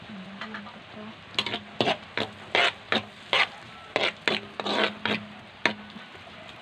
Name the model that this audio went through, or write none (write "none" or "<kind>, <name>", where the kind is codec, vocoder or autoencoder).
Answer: none